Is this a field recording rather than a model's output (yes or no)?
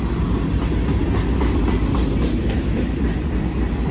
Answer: yes